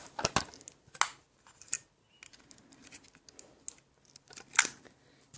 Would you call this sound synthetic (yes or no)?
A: no